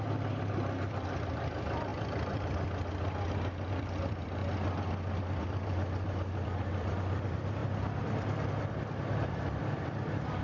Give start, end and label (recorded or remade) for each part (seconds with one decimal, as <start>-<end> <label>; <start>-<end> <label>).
0.0-1.9 remade; 1.9-3.7 recorded; 3.7-4.4 remade; 4.4-5.4 recorded; 5.4-10.4 remade